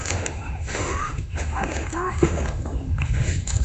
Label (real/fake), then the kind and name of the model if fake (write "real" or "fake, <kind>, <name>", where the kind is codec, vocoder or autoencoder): fake, autoencoder, DAC-VAE